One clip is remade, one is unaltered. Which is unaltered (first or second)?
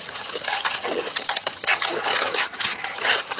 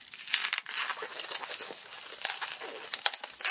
second